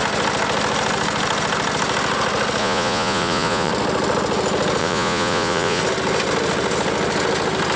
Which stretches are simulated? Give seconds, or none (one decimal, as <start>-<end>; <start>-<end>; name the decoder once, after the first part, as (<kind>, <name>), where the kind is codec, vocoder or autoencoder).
2.6-3.7 (vocoder, Vocos); 4.8-5.8